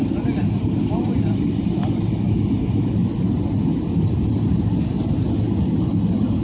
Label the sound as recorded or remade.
recorded